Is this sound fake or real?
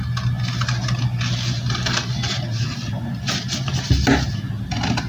real